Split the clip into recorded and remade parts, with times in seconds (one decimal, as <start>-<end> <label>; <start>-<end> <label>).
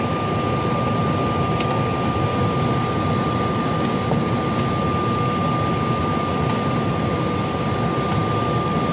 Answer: 0.0-8.9 recorded